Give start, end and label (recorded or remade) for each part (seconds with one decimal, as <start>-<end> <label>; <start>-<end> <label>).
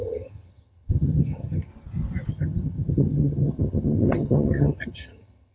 0.0-1.7 remade; 1.7-2.3 recorded; 2.3-5.5 remade